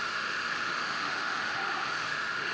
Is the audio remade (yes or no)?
yes